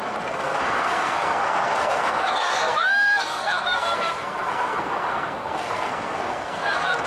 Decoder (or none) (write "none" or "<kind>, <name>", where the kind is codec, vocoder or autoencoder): codec, SNAC